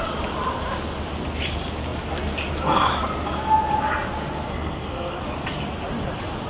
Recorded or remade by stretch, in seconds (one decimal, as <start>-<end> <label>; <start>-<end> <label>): 0.0-4.5 recorded; 4.5-5.2 remade; 5.2-6.5 recorded